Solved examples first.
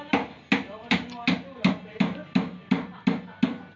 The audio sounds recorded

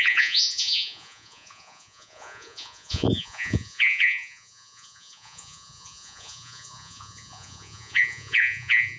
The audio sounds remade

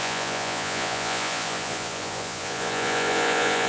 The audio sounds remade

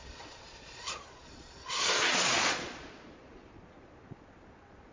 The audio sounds remade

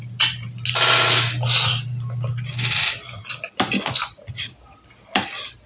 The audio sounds recorded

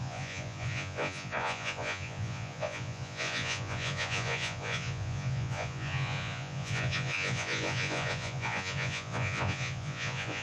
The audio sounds remade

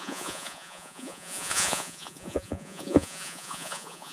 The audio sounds remade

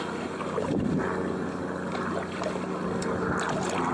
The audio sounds recorded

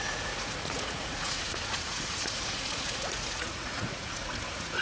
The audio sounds remade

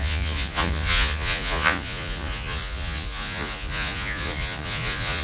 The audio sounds remade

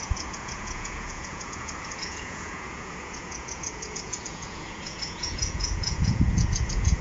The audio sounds remade